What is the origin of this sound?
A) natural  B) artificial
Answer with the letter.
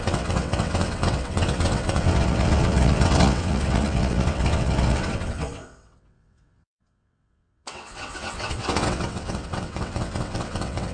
B